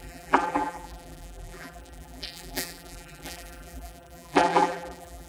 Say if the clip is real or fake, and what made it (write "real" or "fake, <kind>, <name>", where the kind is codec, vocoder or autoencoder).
fake, vocoder, BigVGAN v2